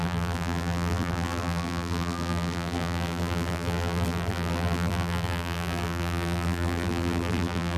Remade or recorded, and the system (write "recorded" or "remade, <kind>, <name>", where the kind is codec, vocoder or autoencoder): remade, vocoder, BigVGAN v2